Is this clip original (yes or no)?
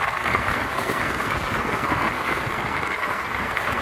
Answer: no